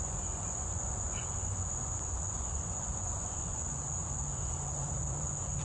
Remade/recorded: remade